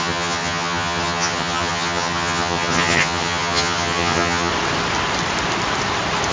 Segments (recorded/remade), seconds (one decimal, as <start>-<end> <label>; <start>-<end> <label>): 0.0-4.5 remade; 4.5-6.3 recorded